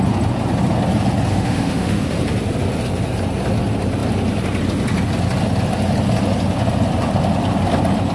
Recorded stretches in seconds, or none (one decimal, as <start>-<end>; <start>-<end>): 0.0-1.3; 2.2-8.1